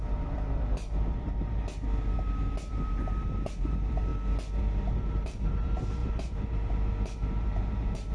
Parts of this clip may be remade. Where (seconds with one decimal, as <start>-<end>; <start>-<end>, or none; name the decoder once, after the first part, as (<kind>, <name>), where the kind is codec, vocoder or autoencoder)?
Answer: 0.0-1.6 (vocoder, BigVGAN v2); 2.7-4.1; 4.6-8.1